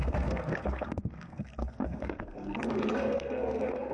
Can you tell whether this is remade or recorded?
remade